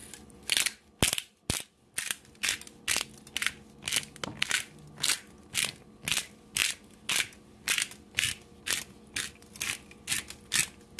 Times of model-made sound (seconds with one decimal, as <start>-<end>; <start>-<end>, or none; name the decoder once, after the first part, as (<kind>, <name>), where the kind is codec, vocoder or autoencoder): none

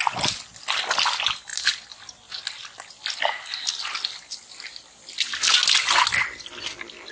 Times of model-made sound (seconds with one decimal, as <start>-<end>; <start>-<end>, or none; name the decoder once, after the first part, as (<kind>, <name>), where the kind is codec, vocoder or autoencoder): none

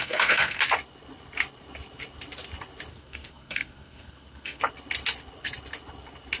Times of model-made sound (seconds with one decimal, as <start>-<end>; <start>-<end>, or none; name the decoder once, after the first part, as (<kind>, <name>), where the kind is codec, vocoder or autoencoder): 0.0-0.6 (codec, SNAC); 2.9-4.6

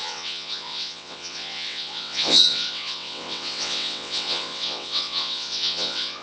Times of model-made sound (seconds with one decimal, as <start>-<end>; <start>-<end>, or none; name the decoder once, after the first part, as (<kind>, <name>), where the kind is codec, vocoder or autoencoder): 0.0-6.2 (vocoder, WaveNeXt)

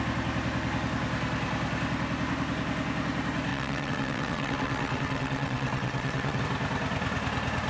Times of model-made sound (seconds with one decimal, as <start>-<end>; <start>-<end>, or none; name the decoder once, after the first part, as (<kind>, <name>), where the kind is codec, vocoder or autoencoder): 3.5-6.4 (vocoder, WaveNeXt)

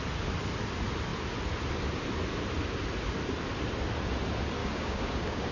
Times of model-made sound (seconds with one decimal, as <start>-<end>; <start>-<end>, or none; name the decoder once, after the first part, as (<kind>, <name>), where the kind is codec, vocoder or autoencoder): 4.6-5.5 (codec, DAC)

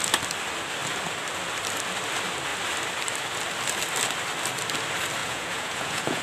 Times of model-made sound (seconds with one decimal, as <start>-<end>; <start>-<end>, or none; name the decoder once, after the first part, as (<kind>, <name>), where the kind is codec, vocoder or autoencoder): 5.2-6.2 (vocoder, Vocos)